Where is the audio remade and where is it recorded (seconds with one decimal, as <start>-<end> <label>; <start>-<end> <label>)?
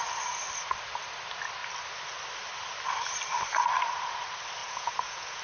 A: 0.0-4.6 recorded; 4.6-5.4 remade